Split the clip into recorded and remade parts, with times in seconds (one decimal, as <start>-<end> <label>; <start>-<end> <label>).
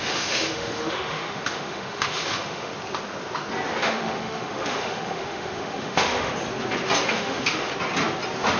0.0-2.7 remade; 2.7-3.8 recorded; 3.8-6.3 remade; 6.3-7.1 recorded; 7.1-7.7 remade; 7.7-8.6 recorded